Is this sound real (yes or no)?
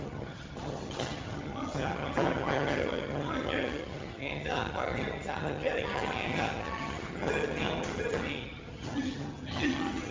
no